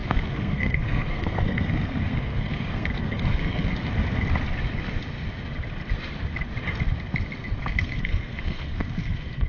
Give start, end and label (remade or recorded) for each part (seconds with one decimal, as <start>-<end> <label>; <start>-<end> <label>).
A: 0.0-3.7 remade; 3.7-7.6 recorded; 7.6-9.5 remade